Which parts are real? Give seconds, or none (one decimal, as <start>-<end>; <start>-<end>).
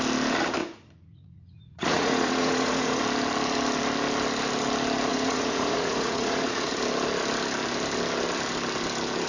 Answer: 0.0-0.6; 3.0-5.1; 6.7-9.3